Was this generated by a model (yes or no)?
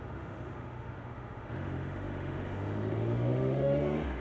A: yes